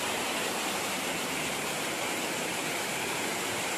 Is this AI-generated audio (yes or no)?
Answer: yes